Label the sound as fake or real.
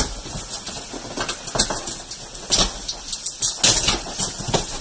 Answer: real